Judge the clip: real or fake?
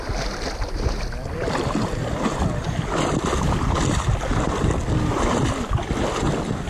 real